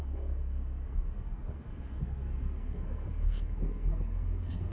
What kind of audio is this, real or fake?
fake